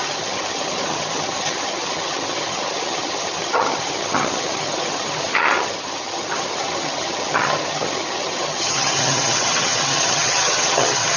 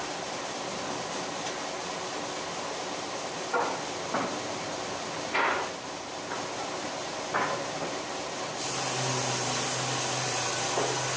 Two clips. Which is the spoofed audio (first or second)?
first